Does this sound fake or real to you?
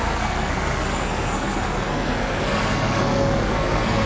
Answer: fake